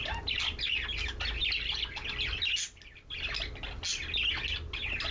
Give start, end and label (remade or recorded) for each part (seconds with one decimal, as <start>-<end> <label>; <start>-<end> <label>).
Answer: 0.0-5.1 recorded